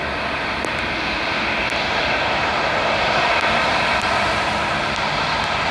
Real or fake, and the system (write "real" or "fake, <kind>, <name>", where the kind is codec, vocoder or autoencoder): real